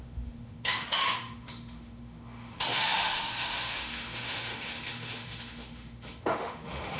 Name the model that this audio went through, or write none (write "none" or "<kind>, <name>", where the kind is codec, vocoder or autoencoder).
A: autoencoder, DAC-VAE